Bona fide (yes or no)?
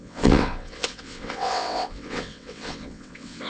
no